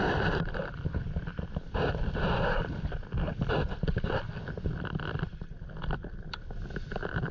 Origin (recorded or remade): recorded